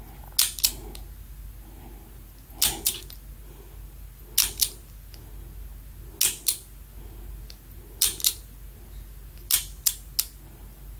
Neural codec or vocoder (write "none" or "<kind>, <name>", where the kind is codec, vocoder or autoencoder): none